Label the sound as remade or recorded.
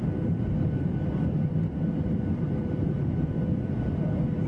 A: remade